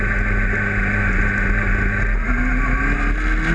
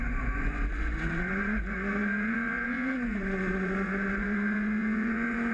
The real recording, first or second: first